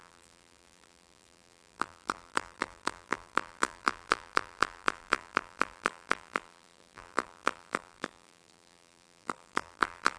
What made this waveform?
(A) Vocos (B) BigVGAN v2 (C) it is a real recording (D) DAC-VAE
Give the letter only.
B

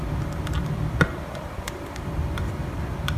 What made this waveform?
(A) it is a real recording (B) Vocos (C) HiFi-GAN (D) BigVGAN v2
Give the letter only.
D